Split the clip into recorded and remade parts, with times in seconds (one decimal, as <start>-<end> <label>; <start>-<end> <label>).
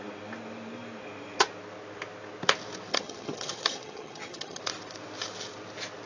0.0-2.9 recorded; 2.9-4.6 remade; 4.6-6.1 recorded